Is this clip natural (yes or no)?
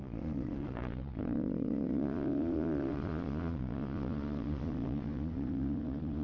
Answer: no